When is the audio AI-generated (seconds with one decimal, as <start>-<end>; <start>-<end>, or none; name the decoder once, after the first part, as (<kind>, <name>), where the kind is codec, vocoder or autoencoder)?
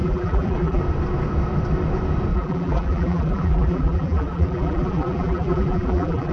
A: 0.0-0.8 (vocoder, BigVGAN v2); 2.3-6.3